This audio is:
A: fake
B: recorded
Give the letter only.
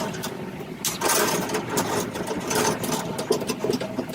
B